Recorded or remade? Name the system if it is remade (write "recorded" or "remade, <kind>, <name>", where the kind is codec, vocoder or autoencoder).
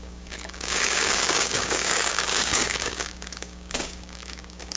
remade, codec, DAC